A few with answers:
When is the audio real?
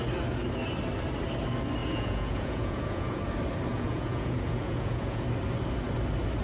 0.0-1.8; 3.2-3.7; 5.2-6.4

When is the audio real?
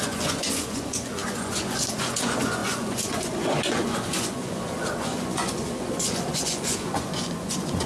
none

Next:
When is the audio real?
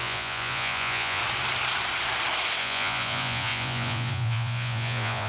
1.2-2.6